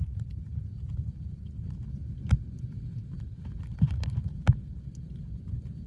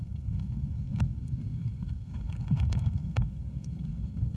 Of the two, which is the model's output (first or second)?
second